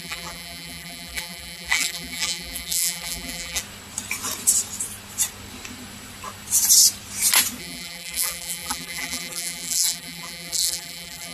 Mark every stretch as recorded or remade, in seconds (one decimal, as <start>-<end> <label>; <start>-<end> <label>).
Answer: 0.0-3.6 remade; 3.6-7.6 recorded; 7.6-11.3 remade